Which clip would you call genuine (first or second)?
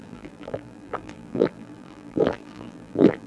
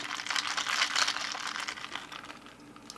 second